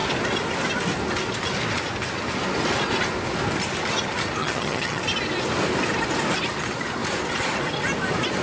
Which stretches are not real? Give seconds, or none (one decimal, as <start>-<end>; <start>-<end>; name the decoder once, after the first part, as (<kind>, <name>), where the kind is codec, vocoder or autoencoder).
4.4-5.0 (vocoder, HiFi-GAN)